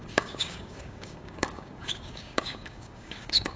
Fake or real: fake